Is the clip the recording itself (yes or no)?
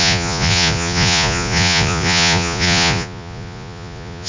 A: no